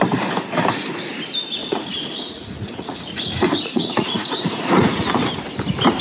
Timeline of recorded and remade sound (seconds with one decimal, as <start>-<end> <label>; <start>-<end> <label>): 0.0-1.6 recorded; 1.6-5.2 remade; 5.2-6.0 recorded